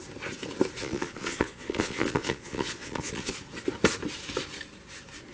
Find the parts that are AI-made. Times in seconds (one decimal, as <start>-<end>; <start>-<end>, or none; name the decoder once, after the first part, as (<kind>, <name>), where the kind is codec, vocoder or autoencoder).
0.8-3.4 (vocoder, Vocos)